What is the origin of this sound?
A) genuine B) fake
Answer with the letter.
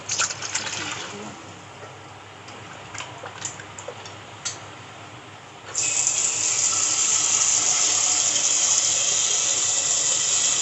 A